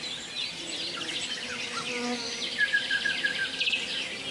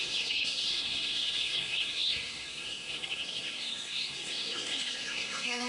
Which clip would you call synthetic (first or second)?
second